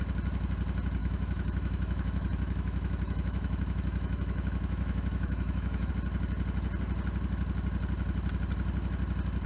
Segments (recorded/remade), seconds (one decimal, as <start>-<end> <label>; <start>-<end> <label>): 0.0-1.0 recorded; 1.0-5.9 remade; 5.9-9.5 recorded